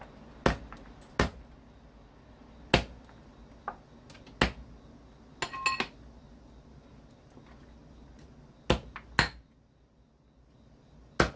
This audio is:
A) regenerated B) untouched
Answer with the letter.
B